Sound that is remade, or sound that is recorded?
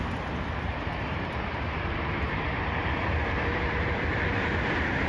remade